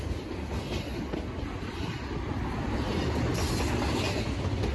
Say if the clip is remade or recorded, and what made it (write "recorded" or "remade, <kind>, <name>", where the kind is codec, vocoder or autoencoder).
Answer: recorded